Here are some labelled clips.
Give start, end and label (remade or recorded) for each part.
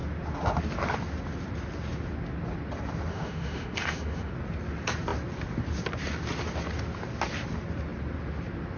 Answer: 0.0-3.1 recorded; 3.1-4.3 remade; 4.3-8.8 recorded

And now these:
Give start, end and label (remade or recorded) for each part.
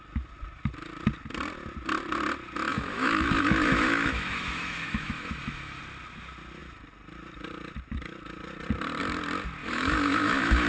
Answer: 0.0-2.7 recorded; 2.7-5.8 remade; 5.8-9.6 recorded; 9.6-10.7 remade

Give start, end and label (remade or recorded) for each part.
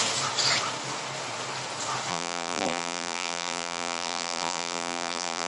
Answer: 0.0-2.1 recorded; 2.1-5.5 remade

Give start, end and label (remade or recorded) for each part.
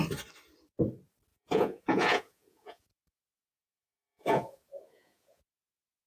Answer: 0.0-1.3 recorded; 1.3-2.9 remade; 2.9-3.4 recorded; 3.4-5.4 remade; 5.4-6.1 recorded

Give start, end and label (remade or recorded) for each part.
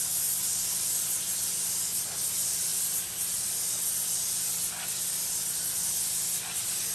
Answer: 0.0-6.9 recorded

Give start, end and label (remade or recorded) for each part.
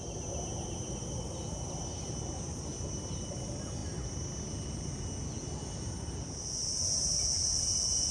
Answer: 0.0-8.1 recorded